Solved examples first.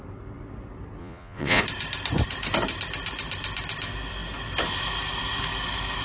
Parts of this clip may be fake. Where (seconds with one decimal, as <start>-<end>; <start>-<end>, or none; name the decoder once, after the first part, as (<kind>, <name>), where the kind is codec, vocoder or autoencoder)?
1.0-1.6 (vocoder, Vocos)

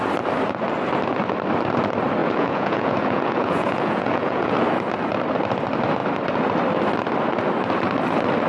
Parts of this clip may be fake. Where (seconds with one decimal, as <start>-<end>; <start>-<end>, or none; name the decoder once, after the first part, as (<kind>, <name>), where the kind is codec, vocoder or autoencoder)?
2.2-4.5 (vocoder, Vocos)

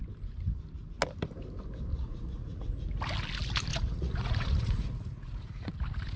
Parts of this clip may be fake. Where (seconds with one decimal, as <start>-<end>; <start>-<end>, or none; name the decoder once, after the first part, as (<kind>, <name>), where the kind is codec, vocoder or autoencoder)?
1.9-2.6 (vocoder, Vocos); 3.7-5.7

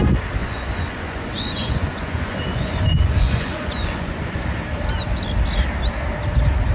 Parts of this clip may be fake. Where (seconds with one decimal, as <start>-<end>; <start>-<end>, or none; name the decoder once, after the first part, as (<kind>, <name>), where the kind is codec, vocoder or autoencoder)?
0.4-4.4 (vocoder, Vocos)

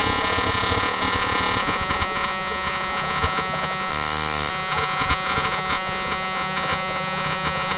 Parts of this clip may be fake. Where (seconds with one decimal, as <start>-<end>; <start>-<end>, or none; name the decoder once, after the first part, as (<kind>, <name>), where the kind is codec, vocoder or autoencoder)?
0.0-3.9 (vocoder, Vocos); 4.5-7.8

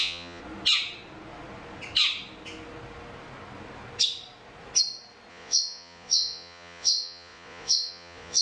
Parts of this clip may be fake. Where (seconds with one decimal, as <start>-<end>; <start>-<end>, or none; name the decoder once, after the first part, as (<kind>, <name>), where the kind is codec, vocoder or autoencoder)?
0.0-0.4 (vocoder, Vocos); 5.3-8.4

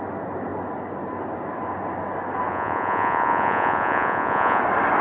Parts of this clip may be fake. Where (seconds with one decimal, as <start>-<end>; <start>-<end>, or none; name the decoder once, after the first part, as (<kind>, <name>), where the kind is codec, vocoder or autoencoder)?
2.5-4.6 (vocoder, Vocos)